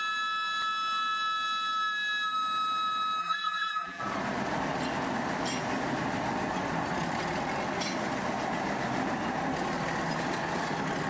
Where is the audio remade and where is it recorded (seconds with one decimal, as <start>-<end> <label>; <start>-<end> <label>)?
0.0-3.2 recorded; 3.2-4.0 remade; 4.0-11.1 recorded